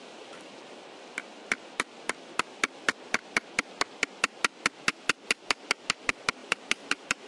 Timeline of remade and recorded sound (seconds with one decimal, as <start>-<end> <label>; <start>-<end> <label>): 0.0-6.4 recorded; 6.4-7.3 remade